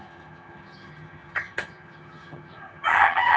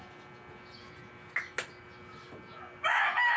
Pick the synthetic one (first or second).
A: first